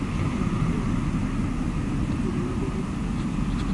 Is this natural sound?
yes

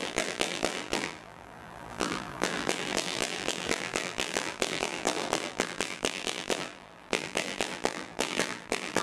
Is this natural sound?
no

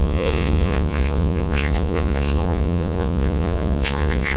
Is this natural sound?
no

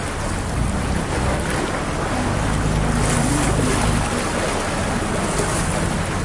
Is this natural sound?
yes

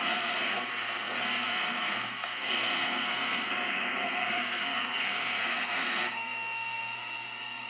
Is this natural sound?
no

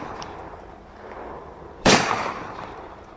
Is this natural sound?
no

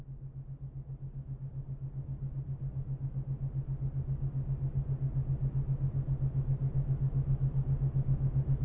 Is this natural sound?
yes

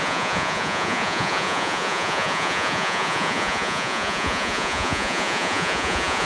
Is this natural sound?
no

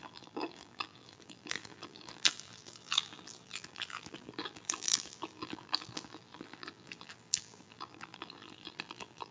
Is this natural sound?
no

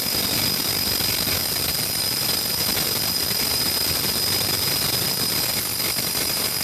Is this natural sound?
yes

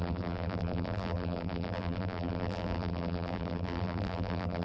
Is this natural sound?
no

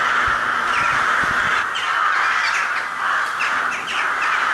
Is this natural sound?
yes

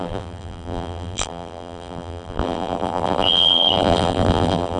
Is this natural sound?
no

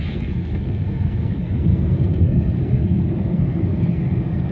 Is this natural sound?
no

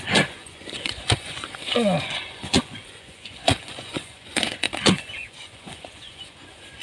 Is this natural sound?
no